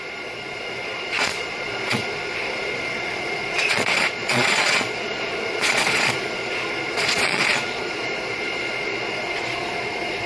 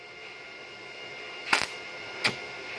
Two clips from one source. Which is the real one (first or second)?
second